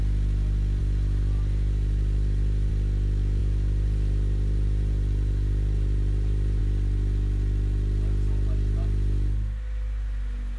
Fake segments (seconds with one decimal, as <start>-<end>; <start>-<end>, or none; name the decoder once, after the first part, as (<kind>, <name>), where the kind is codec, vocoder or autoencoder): 0.8-2.7 (vocoder, BigVGAN v2); 3.4-6.6